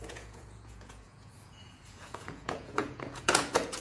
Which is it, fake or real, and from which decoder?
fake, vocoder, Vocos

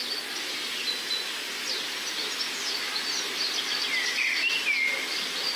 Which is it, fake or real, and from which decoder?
real